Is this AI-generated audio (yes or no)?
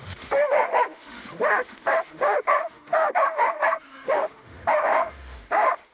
yes